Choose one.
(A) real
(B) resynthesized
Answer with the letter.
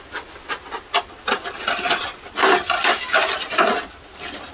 A